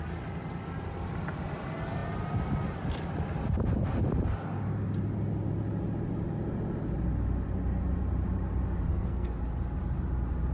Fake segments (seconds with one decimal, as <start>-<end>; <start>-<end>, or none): 8.9-9.4